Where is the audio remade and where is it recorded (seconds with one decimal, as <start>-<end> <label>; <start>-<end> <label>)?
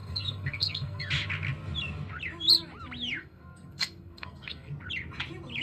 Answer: 0.0-1.1 remade; 1.1-3.2 recorded; 3.2-4.7 remade; 4.7-5.6 recorded